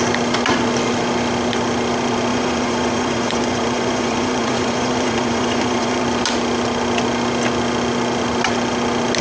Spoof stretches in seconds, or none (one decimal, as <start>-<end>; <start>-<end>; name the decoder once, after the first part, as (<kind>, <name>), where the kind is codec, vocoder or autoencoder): 2.3-6.0 (vocoder, Vocos)